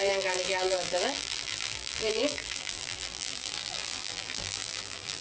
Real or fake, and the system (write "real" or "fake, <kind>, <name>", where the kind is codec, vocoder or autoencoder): fake, vocoder, BigVGAN v2